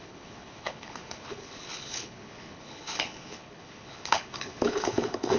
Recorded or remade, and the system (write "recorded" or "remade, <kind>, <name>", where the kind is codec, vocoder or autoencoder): remade, codec, HILCodec